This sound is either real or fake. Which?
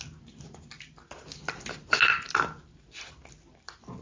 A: real